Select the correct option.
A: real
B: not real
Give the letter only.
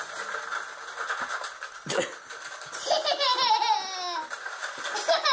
A